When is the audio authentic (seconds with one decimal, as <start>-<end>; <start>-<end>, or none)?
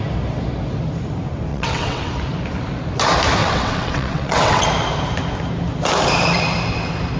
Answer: 0.0-1.5; 2.1-3.4; 4.7-7.2